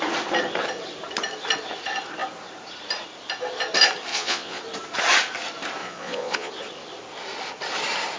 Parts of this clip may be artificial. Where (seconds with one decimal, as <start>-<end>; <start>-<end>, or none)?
4.1-4.6; 5.8-6.5